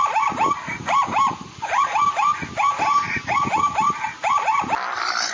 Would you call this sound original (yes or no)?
yes